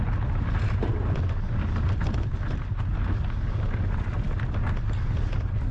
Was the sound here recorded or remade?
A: recorded